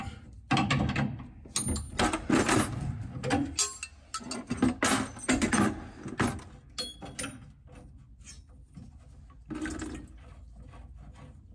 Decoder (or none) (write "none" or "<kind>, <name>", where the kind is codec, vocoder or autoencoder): none